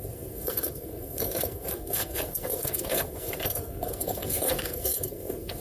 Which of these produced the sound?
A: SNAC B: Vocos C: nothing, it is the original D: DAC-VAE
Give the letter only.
A